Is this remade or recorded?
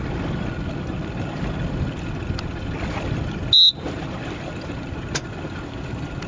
recorded